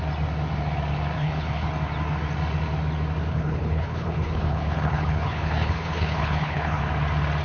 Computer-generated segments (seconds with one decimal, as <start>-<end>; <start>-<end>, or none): 1.2-1.7; 3.3-6.8